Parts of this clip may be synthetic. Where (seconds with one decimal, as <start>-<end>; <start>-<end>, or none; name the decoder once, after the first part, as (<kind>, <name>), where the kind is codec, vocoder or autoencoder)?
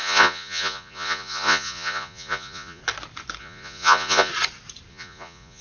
0.0-2.8 (vocoder, Vocos); 3.4-4.3; 4.9-5.6